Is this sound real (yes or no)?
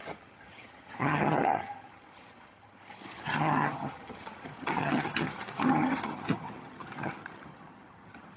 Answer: no